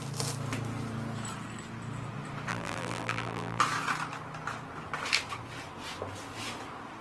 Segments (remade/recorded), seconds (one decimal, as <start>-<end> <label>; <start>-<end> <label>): 0.0-2.5 recorded; 2.5-3.6 remade; 3.6-7.0 recorded